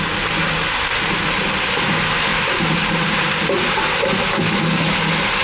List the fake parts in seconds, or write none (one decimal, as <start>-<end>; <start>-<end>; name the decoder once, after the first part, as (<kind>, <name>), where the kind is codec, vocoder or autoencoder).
2.3-3.3 (vocoder, BigVGAN v2)